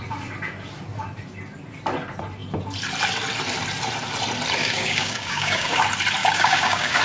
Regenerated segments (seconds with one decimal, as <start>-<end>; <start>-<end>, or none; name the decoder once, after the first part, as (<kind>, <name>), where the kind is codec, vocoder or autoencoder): 4.6-5.8 (codec, DAC); 6.2-7.0